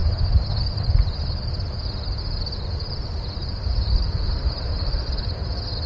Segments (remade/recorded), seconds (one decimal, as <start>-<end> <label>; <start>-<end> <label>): 0.0-3.4 recorded; 3.4-5.2 remade; 5.2-5.9 recorded